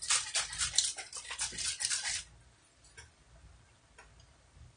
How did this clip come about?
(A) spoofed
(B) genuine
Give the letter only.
B